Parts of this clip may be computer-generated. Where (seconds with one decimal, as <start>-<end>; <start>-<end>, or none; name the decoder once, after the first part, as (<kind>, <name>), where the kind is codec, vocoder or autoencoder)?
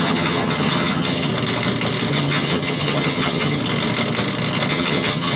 0.0-1.3 (vocoder, HiFi-GAN); 2.1-3.6; 4.7-5.4